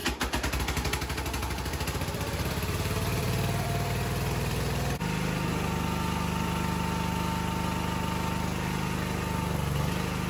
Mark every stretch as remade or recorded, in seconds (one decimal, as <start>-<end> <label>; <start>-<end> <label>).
0.0-0.6 remade; 0.6-1.4 recorded; 1.4-4.6 remade; 4.6-10.3 recorded